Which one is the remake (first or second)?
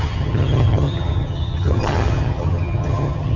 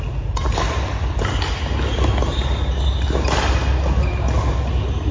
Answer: first